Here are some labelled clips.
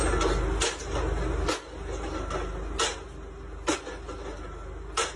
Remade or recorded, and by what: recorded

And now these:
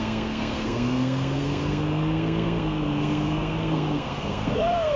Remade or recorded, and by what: remade, codec, SNAC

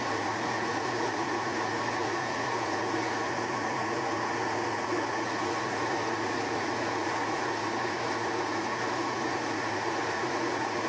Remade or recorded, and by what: remade, vocoder, Vocos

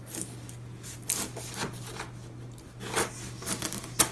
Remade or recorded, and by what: recorded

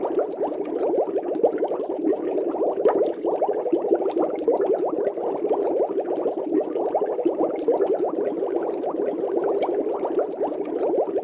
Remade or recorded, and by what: recorded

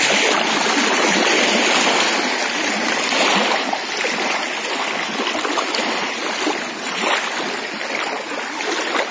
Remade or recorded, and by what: recorded